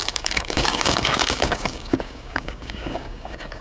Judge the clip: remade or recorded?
remade